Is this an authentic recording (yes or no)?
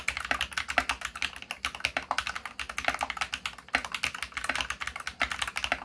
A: yes